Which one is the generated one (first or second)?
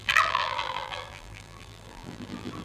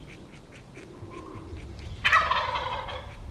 first